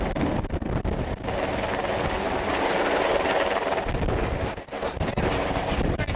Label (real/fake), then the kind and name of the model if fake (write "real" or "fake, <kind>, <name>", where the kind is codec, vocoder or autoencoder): real